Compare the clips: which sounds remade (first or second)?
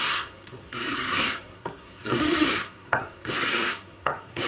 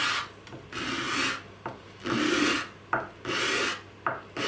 first